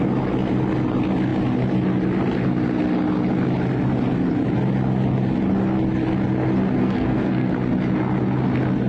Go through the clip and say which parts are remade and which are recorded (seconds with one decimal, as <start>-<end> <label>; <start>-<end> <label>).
0.0-6.8 recorded; 6.8-7.5 remade; 7.5-8.9 recorded